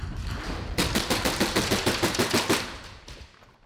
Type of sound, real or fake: real